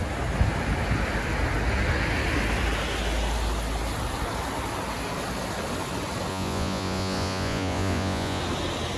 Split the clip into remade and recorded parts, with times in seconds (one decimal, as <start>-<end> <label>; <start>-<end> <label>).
0.0-6.3 recorded; 6.3-8.4 remade; 8.4-9.0 recorded